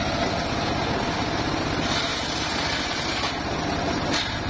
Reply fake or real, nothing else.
real